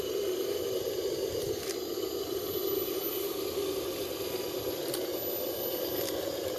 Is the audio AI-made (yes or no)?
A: no